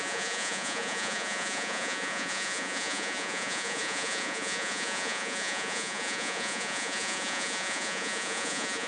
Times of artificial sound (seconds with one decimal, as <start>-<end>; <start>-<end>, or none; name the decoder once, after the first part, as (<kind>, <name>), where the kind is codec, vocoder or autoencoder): 0.0-8.9 (vocoder, Vocos)